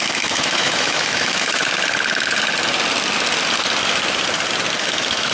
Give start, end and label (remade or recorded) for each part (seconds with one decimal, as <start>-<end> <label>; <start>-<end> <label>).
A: 0.0-1.6 remade; 1.6-4.8 recorded; 4.8-5.3 remade